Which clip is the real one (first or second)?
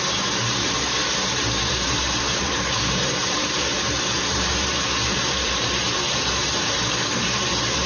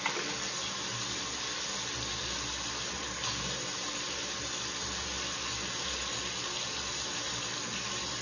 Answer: second